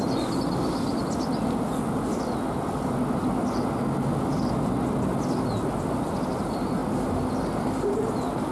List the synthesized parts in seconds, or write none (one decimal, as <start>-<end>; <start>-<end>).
none

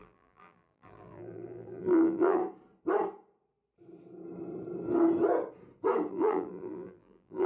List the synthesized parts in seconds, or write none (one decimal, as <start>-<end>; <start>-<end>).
0.0-2.4; 6.1-7.5

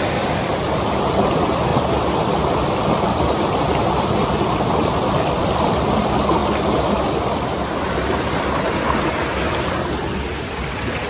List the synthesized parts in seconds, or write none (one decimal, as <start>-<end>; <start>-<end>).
0.0-1.7; 2.5-6.4; 7.9-11.1

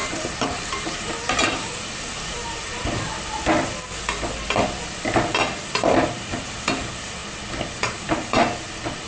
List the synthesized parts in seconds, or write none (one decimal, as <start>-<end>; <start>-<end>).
0.0-2.6; 5.7-7.2; 7.8-8.4